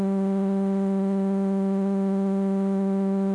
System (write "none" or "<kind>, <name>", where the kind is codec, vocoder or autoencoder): autoencoder, DAC-VAE